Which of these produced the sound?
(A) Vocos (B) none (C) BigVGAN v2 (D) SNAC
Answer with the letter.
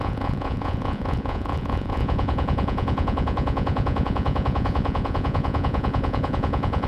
A